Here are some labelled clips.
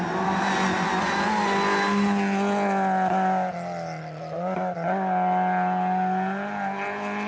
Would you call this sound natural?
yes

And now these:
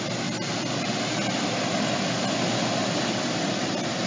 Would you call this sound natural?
yes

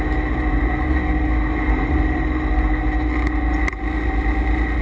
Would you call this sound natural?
yes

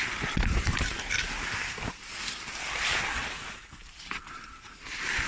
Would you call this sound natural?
yes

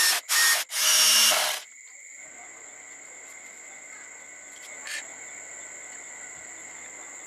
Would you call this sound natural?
yes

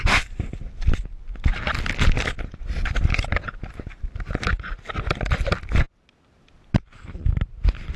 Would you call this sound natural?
yes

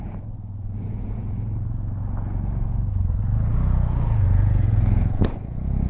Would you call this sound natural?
no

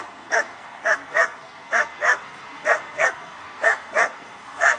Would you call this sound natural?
no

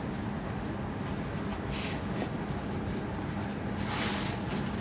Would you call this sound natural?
yes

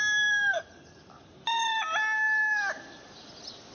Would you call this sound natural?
yes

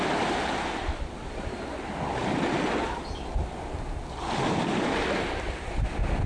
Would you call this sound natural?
yes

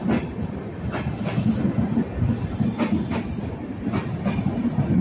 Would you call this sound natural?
yes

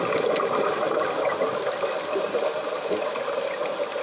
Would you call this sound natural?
yes